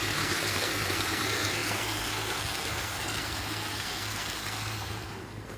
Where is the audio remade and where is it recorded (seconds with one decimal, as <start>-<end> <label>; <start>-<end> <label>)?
0.0-5.6 remade